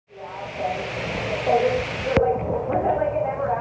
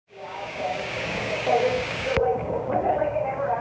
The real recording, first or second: first